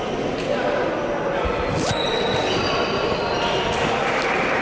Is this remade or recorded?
recorded